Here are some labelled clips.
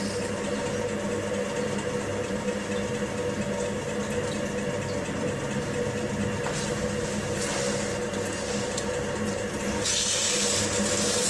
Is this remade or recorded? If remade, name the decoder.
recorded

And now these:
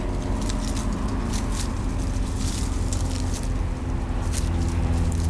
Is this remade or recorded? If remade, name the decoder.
recorded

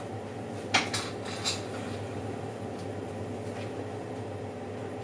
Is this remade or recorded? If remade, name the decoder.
recorded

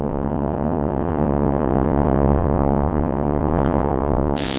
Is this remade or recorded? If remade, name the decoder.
remade, vocoder, WaveNeXt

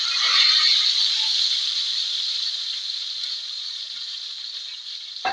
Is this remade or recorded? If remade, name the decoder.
remade, vocoder, BigVGAN v2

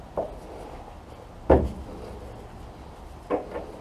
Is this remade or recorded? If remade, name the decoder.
recorded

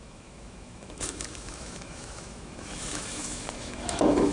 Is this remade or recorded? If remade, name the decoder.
remade, autoencoder, DAC-VAE